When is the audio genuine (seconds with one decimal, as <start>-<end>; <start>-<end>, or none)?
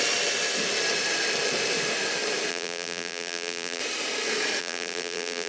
0.0-2.5; 3.8-4.6